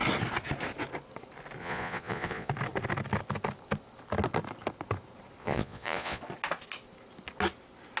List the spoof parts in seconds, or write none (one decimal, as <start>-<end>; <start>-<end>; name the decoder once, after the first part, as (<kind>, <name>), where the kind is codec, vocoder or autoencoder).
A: 1.6-2.5 (vocoder, Vocos); 5.4-6.2